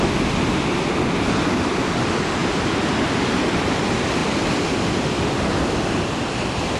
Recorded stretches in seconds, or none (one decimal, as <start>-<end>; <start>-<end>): 0.0-6.8